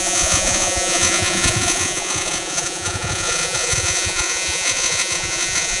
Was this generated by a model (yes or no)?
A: yes